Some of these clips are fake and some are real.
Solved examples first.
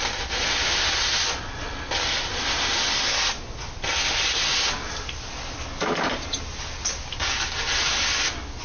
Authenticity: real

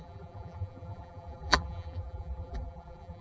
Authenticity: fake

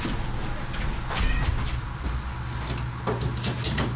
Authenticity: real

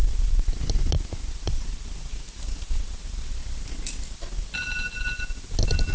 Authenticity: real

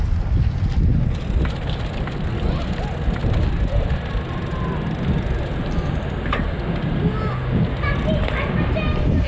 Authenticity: real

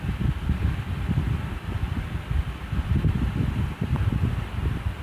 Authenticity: fake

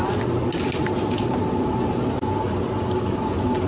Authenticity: real